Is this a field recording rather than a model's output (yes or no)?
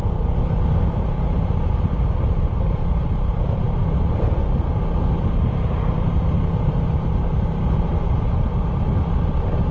yes